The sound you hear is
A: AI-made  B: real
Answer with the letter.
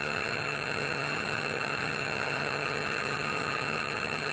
A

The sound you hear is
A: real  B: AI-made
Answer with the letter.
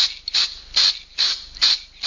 A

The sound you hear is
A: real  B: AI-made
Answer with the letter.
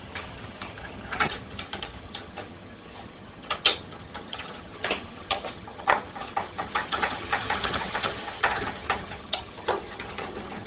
B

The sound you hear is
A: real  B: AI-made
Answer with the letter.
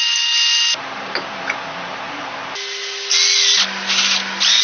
A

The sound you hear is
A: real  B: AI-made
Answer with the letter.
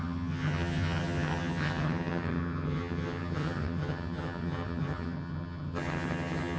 B